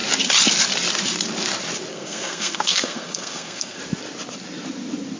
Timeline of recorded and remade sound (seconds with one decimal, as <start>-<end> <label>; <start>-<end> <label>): 0.0-1.9 recorded; 1.9-3.8 remade; 3.8-5.2 recorded